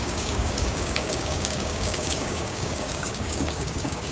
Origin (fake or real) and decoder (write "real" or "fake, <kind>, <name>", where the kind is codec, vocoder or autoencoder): fake, codec, DAC